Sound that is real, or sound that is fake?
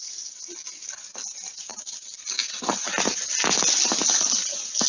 real